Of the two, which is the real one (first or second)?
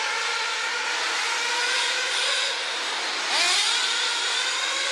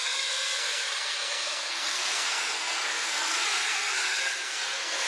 first